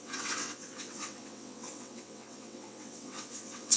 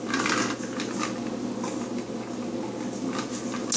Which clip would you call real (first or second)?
second